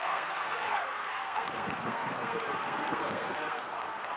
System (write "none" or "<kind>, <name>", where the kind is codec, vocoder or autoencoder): codec, SNAC